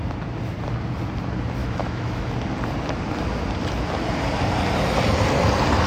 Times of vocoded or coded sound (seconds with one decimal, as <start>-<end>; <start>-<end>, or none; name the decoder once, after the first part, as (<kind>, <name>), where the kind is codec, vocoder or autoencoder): 1.6-2.3 (autoencoder, DAC-VAE)